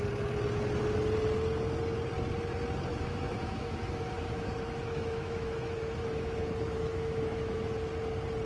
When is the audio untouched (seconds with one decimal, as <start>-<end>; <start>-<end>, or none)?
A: 0.0-2.9; 7.9-8.5